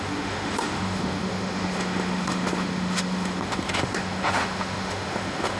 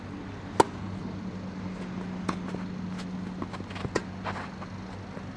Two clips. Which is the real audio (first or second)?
second